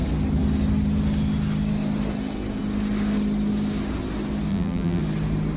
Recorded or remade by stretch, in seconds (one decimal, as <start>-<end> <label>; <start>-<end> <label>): 0.0-4.5 recorded; 4.5-5.0 remade; 5.0-5.6 recorded